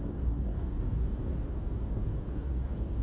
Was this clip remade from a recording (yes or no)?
yes